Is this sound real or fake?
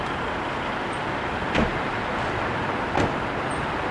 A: real